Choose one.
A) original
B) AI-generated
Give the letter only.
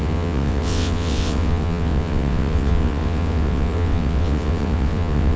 B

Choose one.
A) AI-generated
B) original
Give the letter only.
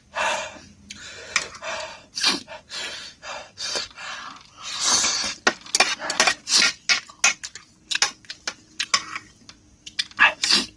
B